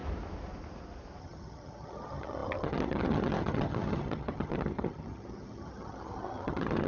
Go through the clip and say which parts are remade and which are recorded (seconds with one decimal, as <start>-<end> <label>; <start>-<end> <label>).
0.0-1.2 recorded; 1.2-6.9 remade